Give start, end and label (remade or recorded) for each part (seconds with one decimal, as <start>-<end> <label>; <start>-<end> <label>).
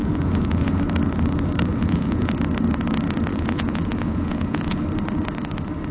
0.0-0.8 remade; 0.8-1.7 recorded; 1.7-2.3 remade; 2.3-3.3 recorded; 3.3-4.8 remade; 4.8-5.9 recorded